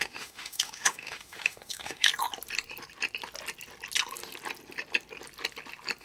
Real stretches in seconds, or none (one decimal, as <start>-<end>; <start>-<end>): 2.1-6.0